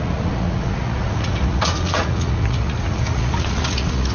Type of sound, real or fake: fake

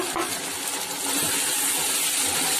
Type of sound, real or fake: real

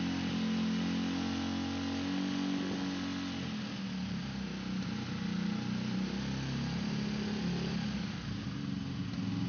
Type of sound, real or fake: real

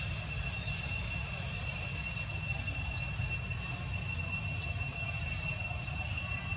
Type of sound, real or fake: real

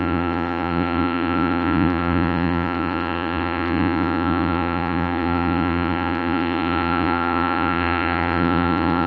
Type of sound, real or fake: fake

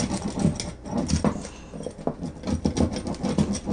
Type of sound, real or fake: real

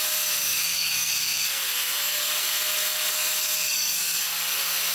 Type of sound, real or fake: fake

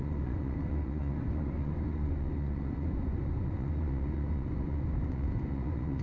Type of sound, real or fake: fake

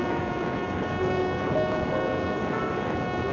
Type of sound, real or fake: fake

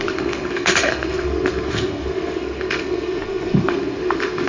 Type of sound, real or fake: fake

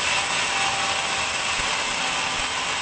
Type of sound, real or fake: real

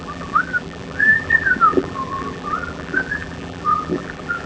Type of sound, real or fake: fake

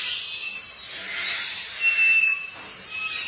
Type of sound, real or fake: real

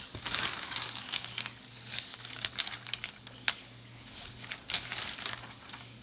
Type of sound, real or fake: fake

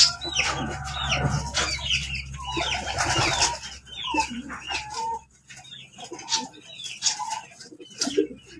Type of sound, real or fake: real